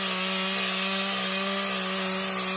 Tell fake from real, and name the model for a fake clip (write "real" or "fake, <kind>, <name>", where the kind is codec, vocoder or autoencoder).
real